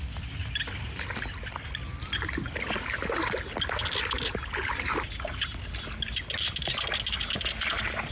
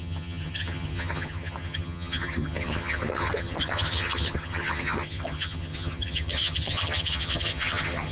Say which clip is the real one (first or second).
first